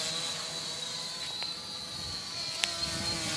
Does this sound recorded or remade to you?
recorded